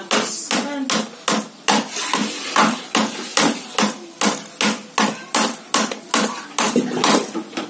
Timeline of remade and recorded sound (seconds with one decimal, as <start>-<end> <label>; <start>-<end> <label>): 0.0-7.7 recorded